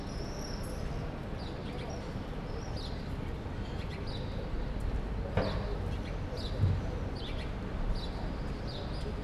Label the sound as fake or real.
real